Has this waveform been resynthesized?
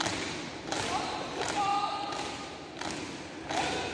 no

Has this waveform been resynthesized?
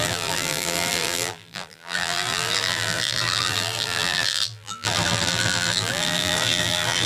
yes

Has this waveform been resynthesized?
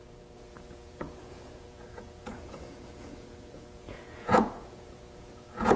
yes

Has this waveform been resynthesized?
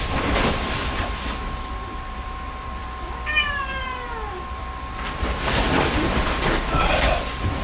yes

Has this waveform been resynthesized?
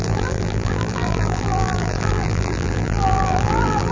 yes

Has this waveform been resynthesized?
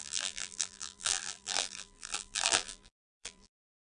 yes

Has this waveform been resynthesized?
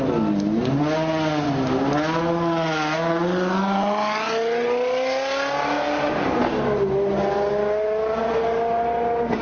no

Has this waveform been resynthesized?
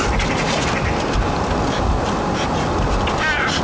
no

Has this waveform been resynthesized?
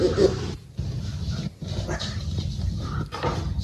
no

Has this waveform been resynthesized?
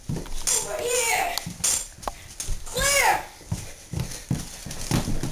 no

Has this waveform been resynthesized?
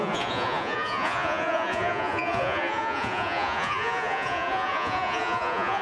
yes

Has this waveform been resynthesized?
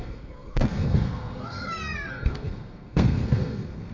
yes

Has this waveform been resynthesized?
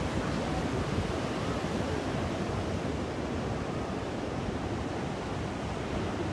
no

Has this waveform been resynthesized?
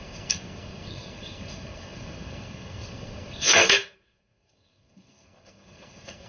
yes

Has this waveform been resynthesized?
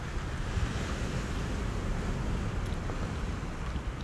no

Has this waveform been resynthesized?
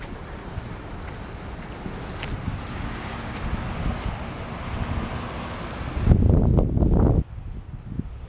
no